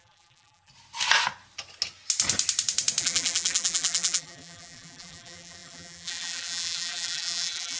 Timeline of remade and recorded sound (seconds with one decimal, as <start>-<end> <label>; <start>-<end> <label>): 0.0-0.7 remade; 0.7-3.0 recorded; 3.0-7.8 remade